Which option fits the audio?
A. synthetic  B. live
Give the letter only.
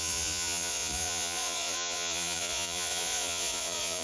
A